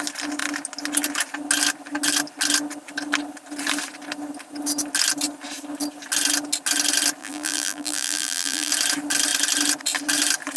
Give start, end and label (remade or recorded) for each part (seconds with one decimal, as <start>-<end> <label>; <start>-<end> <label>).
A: 0.0-7.2 recorded; 7.2-8.7 remade; 8.7-10.6 recorded